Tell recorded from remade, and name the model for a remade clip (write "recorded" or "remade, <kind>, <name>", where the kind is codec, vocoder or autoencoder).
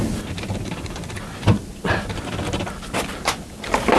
recorded